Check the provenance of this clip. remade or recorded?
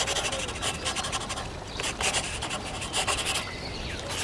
recorded